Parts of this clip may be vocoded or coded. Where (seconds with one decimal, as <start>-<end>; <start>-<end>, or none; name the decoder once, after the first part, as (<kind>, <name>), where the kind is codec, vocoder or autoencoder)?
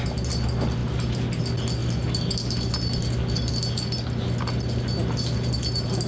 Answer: none